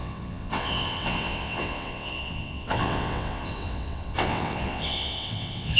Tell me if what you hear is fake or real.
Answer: fake